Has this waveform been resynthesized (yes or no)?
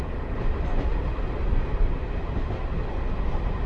no